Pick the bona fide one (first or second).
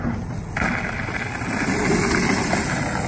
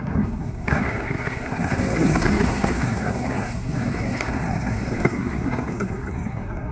first